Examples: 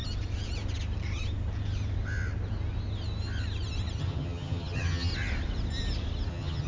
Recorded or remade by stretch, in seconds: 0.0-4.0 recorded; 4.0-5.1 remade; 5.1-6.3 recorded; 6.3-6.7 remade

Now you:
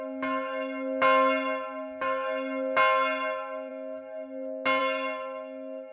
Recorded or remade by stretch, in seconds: 0.0-5.9 recorded

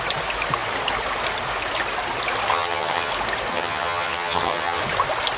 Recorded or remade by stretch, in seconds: 0.0-2.5 recorded; 2.5-3.1 remade; 3.1-3.5 recorded; 3.5-4.8 remade; 4.8-5.4 recorded